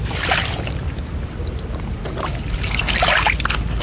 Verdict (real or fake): real